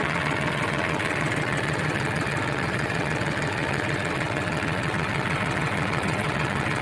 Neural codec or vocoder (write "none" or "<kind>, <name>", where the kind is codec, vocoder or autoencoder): vocoder, WaveNeXt